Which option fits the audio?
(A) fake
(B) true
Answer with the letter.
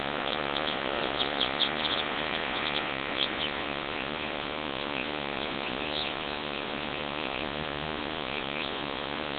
A